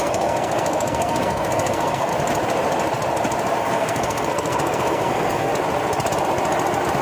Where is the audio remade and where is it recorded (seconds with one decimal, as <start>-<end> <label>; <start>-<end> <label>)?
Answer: 0.0-2.1 remade; 2.1-3.6 recorded; 3.6-5.5 remade; 5.5-7.0 recorded